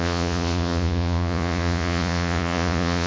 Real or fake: fake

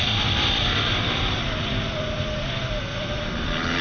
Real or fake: fake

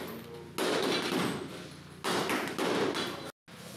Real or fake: real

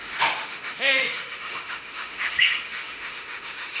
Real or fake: fake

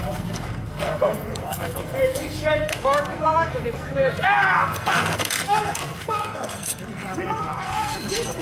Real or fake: fake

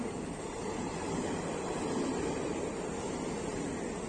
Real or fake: real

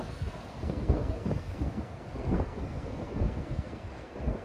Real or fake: fake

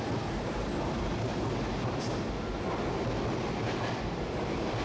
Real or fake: real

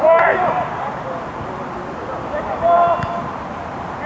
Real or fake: real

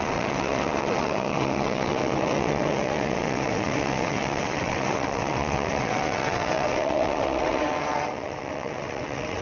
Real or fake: fake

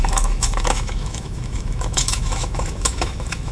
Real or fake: fake